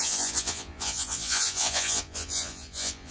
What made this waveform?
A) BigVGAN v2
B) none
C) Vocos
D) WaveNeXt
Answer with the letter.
C